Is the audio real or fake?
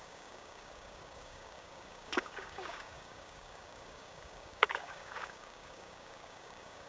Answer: fake